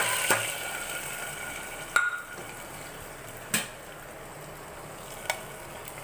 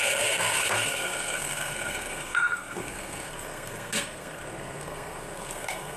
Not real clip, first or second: second